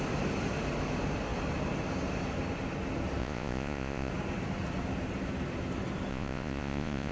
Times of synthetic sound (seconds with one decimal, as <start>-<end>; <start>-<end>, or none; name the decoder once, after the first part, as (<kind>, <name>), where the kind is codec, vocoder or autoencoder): 3.2-4.1 (vocoder, Vocos); 6.1-7.1